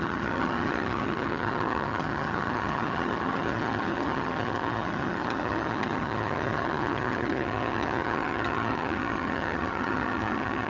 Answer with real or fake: fake